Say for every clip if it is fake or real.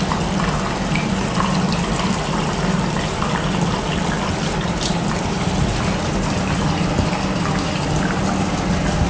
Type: real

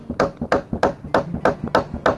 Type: real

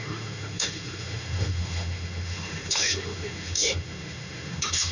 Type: fake